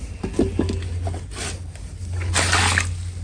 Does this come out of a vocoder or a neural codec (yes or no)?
no